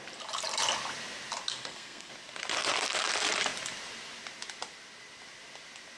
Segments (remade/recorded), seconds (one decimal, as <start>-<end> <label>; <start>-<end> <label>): 0.0-1.5 recorded; 1.5-2.1 remade; 2.1-6.0 recorded